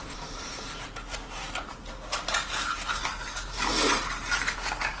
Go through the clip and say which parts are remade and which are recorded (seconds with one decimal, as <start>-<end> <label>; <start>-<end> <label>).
0.0-5.0 recorded